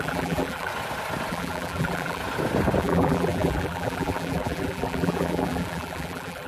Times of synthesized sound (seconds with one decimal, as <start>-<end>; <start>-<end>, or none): 0.0-0.7; 1.3-2.2; 2.8-6.5